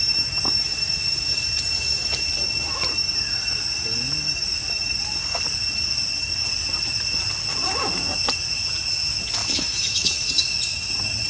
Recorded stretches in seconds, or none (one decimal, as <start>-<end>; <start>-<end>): 0.0-9.4; 10.3-11.3